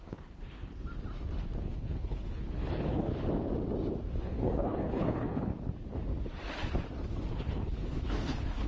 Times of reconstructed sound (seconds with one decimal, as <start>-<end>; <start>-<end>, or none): 0.0-0.7; 1.6-3.1; 4.2-5.5; 7.3-8.7